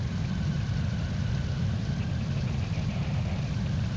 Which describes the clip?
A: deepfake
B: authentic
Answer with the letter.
B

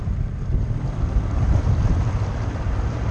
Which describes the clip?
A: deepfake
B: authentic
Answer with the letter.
B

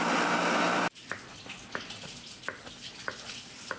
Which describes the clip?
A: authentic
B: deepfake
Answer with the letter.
A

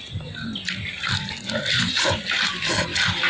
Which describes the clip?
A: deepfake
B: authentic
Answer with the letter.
B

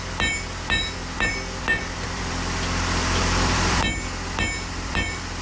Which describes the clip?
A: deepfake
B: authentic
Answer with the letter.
A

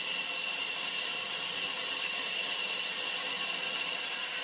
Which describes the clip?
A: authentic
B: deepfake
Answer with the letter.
A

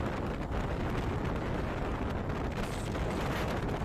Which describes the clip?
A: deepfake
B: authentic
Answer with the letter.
B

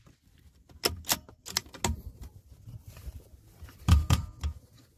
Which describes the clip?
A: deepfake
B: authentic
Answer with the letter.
B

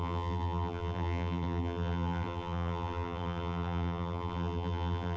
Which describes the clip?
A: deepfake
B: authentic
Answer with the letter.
A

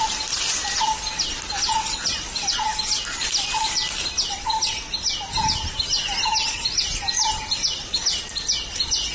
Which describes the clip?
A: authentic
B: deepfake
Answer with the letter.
A